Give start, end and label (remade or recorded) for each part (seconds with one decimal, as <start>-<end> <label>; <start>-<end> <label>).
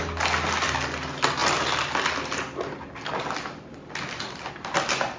0.0-5.2 recorded